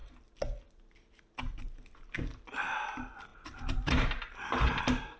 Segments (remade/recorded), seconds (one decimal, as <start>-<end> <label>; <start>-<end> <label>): 0.0-3.3 recorded; 3.3-4.8 remade; 4.8-5.2 recorded